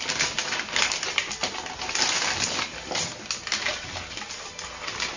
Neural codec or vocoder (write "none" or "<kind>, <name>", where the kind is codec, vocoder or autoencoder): none